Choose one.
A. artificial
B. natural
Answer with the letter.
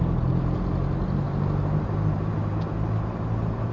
B